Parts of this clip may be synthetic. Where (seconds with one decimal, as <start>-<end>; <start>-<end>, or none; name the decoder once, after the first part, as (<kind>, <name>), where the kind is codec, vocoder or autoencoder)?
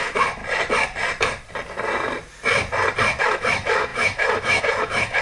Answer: 0.0-0.4 (autoencoder, DAC-VAE); 3.2-5.2